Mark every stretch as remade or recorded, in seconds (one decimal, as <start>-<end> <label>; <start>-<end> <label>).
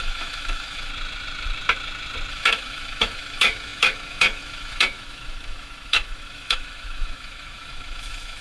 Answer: 0.0-0.9 remade; 0.9-2.3 recorded; 2.3-8.4 remade